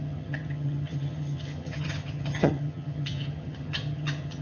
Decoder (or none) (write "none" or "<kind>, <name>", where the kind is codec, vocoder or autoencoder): vocoder, HiFi-GAN